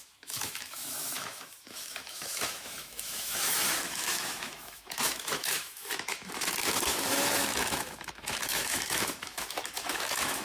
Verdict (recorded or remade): remade